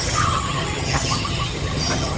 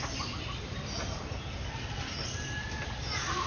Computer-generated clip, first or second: first